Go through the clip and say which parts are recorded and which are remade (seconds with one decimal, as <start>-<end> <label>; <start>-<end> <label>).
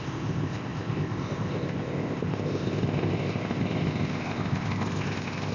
0.0-5.5 remade